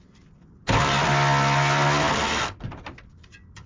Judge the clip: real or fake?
real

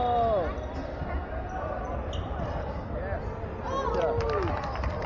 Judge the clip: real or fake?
real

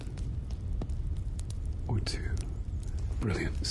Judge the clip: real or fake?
fake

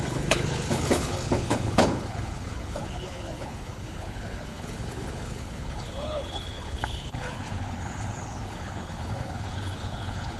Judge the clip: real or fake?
fake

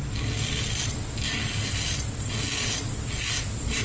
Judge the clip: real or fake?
real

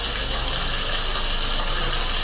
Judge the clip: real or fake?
real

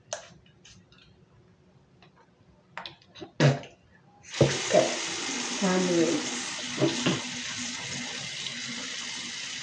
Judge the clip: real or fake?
real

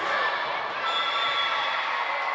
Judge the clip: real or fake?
real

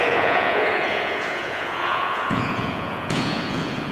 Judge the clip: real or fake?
fake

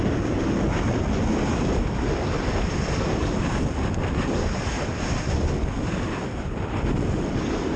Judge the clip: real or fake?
real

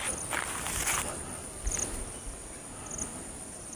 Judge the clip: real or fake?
real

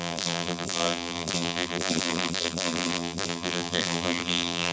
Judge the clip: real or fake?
fake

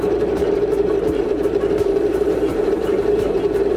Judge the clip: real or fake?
fake